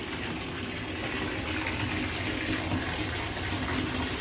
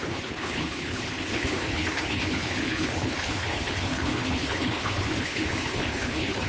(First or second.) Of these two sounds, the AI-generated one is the second